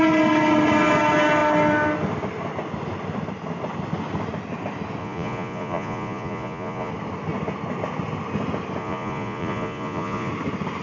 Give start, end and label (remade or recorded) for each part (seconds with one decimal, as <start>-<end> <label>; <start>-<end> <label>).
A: 0.0-5.0 recorded; 5.0-6.9 remade; 6.9-8.8 recorded; 8.8-10.3 remade; 10.3-10.8 recorded